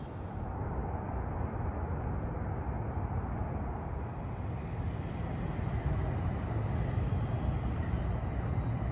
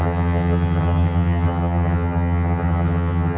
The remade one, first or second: second